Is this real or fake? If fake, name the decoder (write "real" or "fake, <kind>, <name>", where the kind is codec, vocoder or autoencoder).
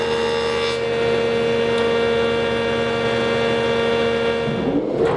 real